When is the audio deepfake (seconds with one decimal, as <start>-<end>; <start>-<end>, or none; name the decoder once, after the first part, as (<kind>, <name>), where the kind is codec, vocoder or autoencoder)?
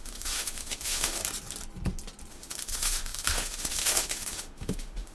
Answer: 0.0-1.2 (autoencoder, DAC-VAE); 2.3-5.1